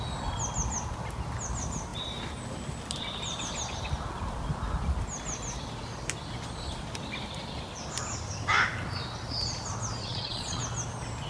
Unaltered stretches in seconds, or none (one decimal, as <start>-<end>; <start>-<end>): 0.0-10.0; 10.6-11.3